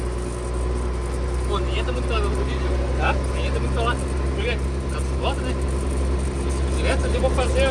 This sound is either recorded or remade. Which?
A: recorded